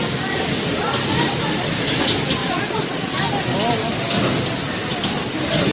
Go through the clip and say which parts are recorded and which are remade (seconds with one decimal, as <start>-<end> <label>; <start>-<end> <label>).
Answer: 0.0-2.4 recorded; 2.4-3.2 remade; 3.2-5.7 recorded

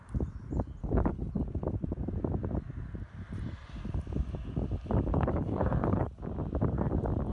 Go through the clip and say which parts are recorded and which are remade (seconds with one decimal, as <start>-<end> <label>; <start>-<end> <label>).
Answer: 0.0-0.8 recorded; 0.8-1.3 remade; 1.3-5.1 recorded; 5.1-6.2 remade; 6.2-7.3 recorded

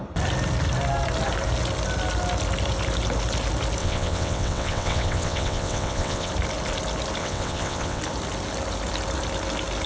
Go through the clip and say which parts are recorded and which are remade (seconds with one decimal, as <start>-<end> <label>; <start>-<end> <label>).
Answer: 0.0-3.8 recorded; 3.8-6.3 remade; 6.3-7.2 recorded; 7.2-8.0 remade; 8.0-9.9 recorded

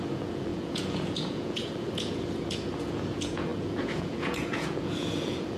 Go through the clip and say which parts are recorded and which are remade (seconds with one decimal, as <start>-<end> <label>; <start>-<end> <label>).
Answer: 0.0-5.6 remade

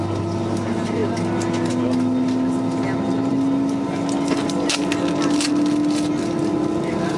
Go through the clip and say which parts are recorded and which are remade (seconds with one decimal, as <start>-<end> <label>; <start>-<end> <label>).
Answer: 0.0-7.2 recorded

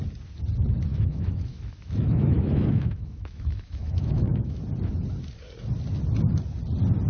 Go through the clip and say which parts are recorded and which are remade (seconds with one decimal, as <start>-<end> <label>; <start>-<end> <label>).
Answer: 0.0-0.9 recorded; 0.9-4.6 remade; 4.6-7.1 recorded

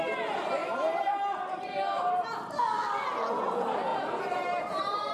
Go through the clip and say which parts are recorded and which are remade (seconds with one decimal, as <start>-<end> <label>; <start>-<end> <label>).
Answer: 0.0-0.6 recorded; 0.6-2.5 remade; 2.5-3.9 recorded; 3.9-5.1 remade